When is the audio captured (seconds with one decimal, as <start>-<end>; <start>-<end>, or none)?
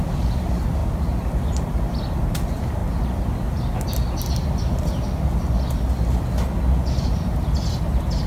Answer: 0.0-8.3